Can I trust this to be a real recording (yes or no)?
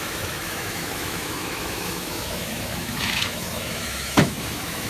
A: no